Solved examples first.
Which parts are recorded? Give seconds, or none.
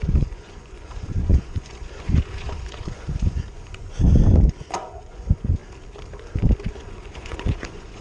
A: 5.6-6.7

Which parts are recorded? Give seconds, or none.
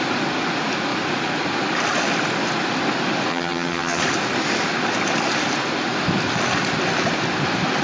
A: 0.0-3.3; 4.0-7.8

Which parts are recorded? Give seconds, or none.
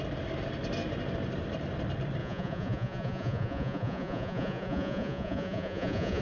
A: 0.0-2.2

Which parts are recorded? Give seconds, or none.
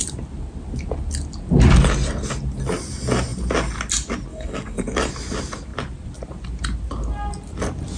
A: 0.0-4.3; 5.1-8.0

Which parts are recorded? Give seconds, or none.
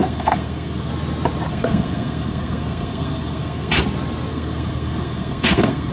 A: 0.9-1.5; 3.7-4.3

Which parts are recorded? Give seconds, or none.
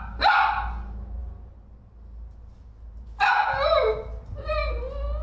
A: 0.0-5.2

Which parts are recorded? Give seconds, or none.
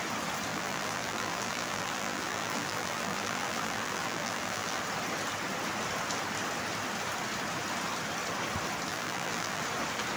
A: 0.0-0.5; 4.8-8.9; 9.6-10.2